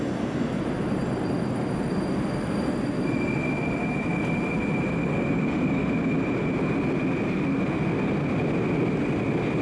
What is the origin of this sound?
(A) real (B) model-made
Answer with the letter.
A